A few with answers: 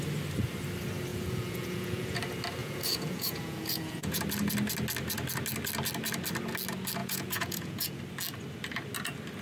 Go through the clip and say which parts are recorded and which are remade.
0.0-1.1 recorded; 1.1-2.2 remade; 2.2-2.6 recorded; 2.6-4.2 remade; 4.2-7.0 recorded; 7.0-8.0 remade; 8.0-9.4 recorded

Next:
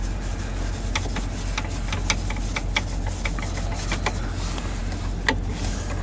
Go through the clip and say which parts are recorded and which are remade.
0.0-6.0 recorded

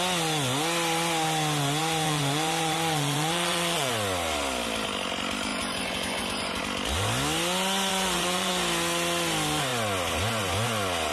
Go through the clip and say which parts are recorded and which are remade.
0.0-1.8 recorded; 1.8-3.9 remade; 3.9-5.5 recorded; 5.5-6.6 remade; 6.6-7.9 recorded; 7.9-8.5 remade; 8.5-11.1 recorded